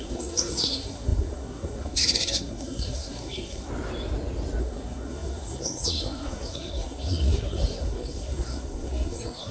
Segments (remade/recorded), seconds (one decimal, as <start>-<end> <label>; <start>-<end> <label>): 0.0-3.7 remade; 3.7-4.6 recorded; 4.6-9.5 remade